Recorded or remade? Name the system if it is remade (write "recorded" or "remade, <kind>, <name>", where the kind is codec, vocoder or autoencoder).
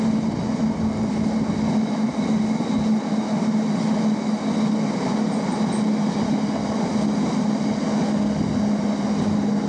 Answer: recorded